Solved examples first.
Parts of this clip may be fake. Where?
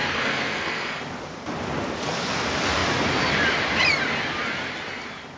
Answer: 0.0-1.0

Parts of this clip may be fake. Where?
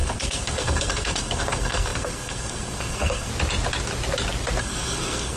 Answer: 0.0-3.3; 4.6-5.4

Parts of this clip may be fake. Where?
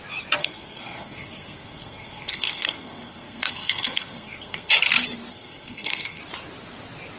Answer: 0.4-4.7; 5.3-6.2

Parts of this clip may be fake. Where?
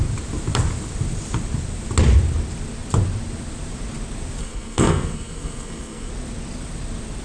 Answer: 4.4-6.1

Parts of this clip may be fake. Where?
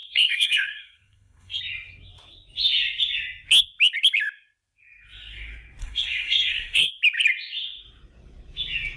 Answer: 0.0-1.6; 5.8-6.9